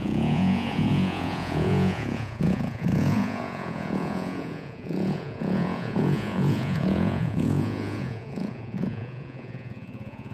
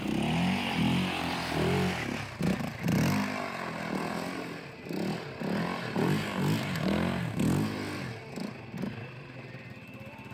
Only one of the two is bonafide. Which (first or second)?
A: second